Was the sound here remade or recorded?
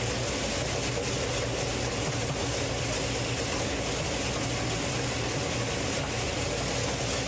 recorded